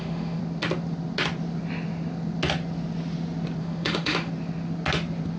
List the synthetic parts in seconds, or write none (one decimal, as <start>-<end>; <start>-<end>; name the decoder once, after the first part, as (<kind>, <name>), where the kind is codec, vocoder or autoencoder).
0.0-0.4 (autoencoder, DAC-VAE); 3.6-4.3